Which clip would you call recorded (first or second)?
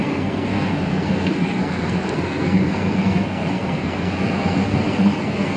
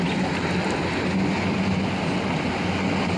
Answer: second